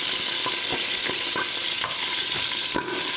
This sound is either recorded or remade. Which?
recorded